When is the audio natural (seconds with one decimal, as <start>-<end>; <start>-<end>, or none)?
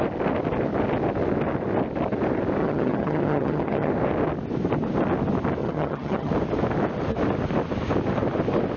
0.0-2.6; 3.9-5.6; 6.3-8.8